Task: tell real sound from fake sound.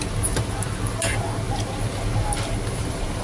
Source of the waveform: real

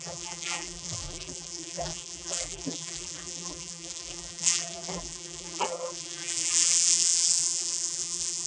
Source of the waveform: fake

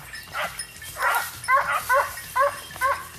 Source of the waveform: real